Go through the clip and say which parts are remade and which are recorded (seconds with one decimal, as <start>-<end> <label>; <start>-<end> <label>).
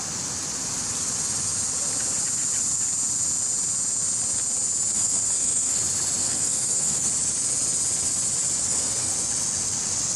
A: 0.0-4.9 recorded; 4.9-5.8 remade; 5.8-6.2 recorded; 6.2-7.1 remade; 7.1-8.6 recorded; 8.6-9.1 remade; 9.1-10.2 recorded